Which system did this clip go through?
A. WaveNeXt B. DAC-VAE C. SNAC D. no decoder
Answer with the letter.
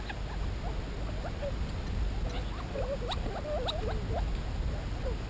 D